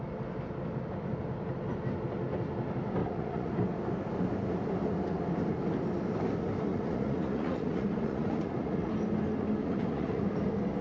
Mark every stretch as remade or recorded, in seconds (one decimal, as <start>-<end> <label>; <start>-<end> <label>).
0.0-3.0 recorded; 3.0-3.5 remade; 3.5-6.7 recorded; 6.7-8.9 remade; 8.9-9.6 recorded; 9.6-10.2 remade; 10.2-10.8 recorded